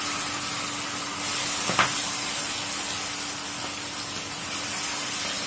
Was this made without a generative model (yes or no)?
yes